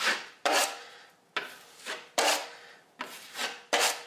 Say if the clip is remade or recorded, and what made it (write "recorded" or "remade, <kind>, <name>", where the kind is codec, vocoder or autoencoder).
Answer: recorded